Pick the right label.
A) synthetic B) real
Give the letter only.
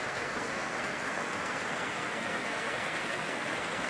A